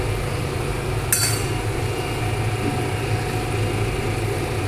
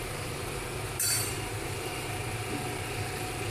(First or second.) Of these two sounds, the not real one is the second